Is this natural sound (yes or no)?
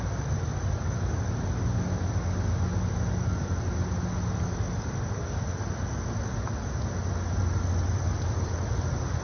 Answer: yes